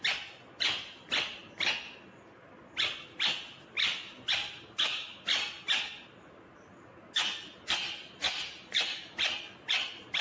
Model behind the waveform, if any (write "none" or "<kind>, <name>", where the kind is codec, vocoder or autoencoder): none